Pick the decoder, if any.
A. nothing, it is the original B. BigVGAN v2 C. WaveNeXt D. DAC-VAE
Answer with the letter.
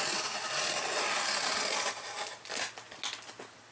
A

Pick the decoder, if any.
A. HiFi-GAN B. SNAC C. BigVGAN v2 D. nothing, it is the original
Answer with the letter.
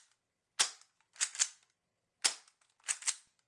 D